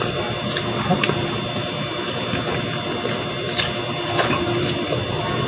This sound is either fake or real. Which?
real